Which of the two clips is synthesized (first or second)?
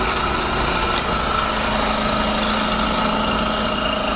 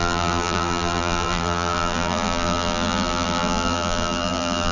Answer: second